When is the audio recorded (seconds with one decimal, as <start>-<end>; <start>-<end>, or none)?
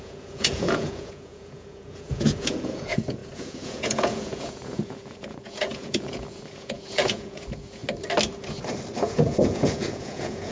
7.8-9.0